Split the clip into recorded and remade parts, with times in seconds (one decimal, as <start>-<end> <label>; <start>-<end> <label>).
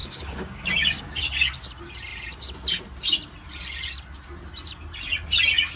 0.0-1.2 remade; 1.2-5.8 recorded